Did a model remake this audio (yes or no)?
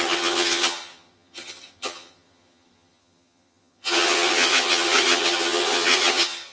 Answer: yes